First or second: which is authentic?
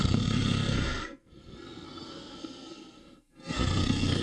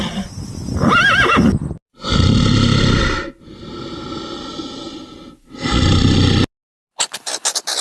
second